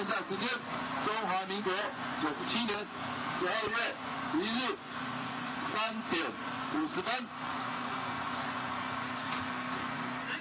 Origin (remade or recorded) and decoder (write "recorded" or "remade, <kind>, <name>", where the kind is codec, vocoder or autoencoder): remade, vocoder, Vocos